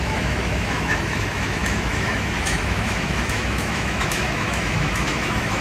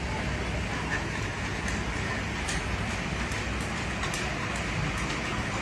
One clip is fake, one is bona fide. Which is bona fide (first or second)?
second